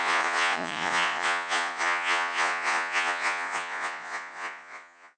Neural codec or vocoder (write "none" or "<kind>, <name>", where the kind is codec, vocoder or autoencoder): vocoder, Vocos